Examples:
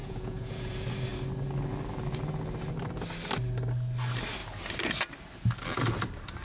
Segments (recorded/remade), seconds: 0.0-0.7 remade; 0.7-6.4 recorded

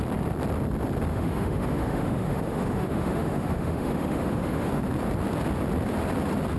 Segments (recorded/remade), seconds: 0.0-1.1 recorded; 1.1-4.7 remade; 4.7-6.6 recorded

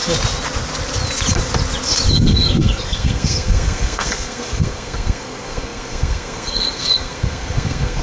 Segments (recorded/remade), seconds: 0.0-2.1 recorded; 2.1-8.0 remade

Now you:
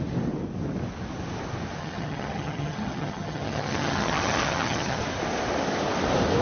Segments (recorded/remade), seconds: 0.0-1.8 recorded; 1.8-5.0 remade; 5.0-6.4 recorded

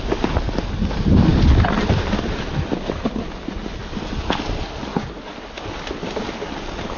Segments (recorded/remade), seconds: 0.0-1.3 recorded; 1.3-3.1 remade; 3.1-7.0 recorded